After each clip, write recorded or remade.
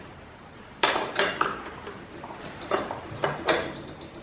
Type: remade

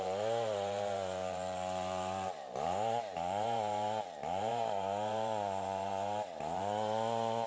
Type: remade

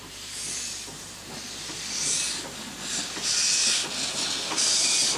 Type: recorded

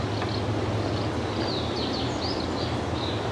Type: recorded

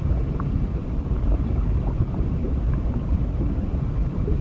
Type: remade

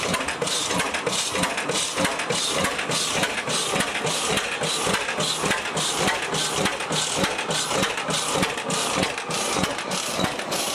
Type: recorded